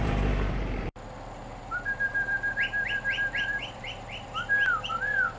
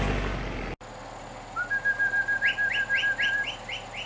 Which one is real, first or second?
second